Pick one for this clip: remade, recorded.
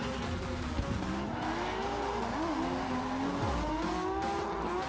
recorded